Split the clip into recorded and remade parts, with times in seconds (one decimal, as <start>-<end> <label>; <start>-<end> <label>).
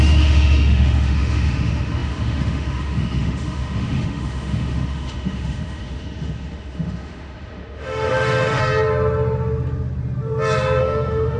0.0-8.6 remade; 8.6-10.8 recorded; 10.8-11.4 remade